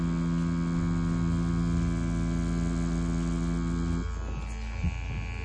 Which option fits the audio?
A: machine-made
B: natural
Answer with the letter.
B